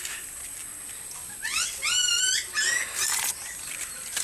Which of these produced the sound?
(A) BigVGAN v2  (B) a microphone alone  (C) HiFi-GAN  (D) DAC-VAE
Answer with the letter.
B